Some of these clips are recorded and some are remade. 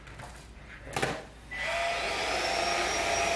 recorded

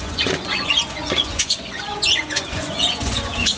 remade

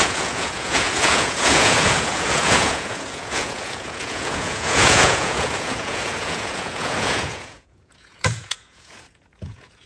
remade